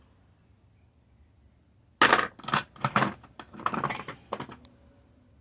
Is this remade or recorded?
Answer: recorded